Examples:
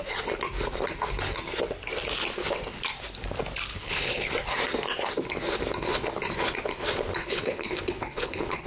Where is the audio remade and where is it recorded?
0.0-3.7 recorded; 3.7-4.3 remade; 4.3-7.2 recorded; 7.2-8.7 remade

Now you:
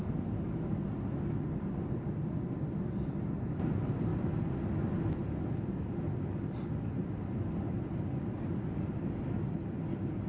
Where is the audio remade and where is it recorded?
0.0-10.3 recorded

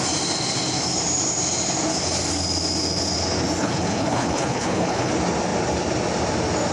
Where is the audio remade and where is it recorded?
0.0-3.6 recorded; 3.6-5.1 remade; 5.1-6.7 recorded

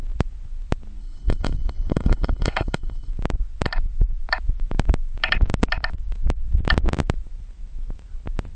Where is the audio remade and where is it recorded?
0.0-1.0 recorded; 1.0-3.1 remade; 3.1-8.6 recorded

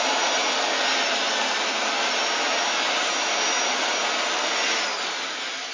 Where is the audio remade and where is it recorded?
0.0-5.7 recorded

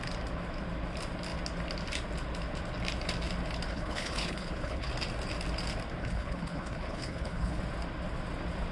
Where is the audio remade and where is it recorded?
0.0-3.7 recorded; 3.7-4.9 remade; 4.9-6.0 recorded; 6.0-7.6 remade; 7.6-8.7 recorded

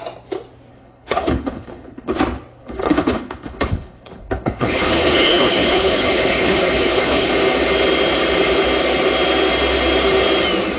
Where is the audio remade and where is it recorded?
0.0-0.7 recorded; 0.7-2.2 remade; 2.2-2.6 recorded; 2.6-7.3 remade; 7.3-10.8 recorded

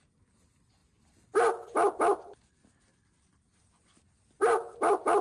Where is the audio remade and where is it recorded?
0.0-5.2 recorded